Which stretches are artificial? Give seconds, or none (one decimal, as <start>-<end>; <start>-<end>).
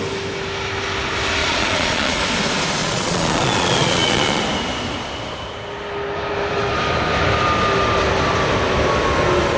1.4-2.2; 2.8-4.4